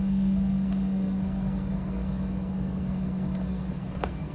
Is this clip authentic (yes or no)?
no